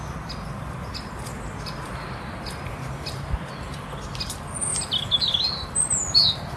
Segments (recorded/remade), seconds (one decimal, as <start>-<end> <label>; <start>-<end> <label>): 0.0-1.3 recorded; 1.3-3.5 remade; 3.5-6.6 recorded